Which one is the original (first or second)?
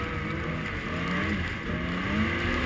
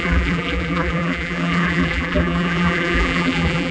first